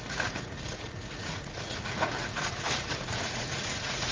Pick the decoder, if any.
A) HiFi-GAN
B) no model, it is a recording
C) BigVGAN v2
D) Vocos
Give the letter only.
D